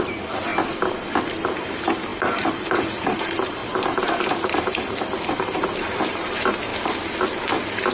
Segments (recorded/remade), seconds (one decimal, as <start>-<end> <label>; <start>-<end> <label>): 0.0-0.5 remade; 0.5-1.5 recorded; 1.5-6.7 remade; 6.7-7.9 recorded